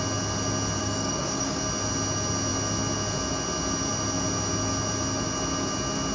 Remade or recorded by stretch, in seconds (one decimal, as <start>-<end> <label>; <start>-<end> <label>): 0.0-0.8 recorded; 0.8-1.6 remade; 1.6-6.1 recorded